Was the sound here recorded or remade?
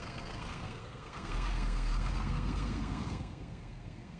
remade